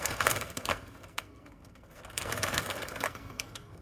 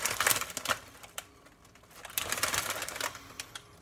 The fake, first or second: first